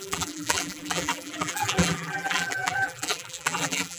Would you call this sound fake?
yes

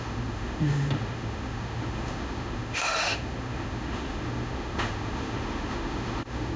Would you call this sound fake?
yes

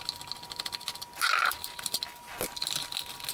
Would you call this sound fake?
no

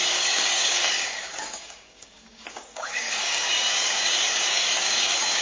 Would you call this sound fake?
yes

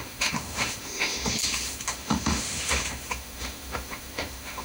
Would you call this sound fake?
yes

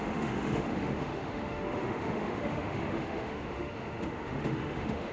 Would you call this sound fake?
yes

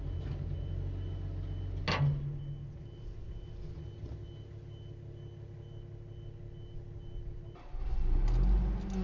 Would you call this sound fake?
no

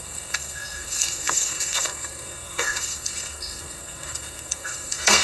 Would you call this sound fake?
yes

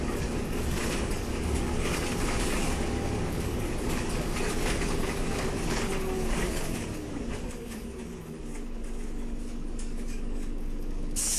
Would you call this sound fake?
yes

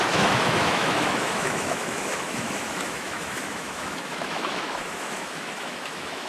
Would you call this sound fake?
yes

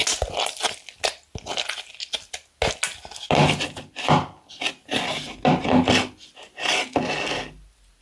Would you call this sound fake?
no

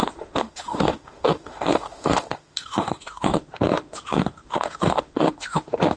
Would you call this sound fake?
yes